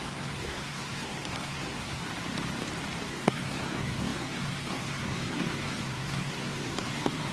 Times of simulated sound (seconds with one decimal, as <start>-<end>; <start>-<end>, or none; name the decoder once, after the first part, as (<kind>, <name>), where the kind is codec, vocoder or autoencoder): 0.0-2.0 (codec, SNAC); 3.1-7.3